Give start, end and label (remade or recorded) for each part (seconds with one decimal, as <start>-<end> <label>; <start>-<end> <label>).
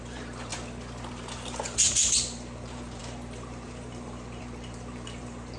0.0-0.5 remade; 0.5-1.1 recorded; 1.1-5.6 remade